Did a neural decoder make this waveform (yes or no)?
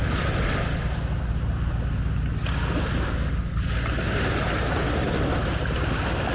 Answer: no